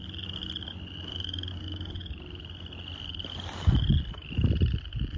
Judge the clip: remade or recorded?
recorded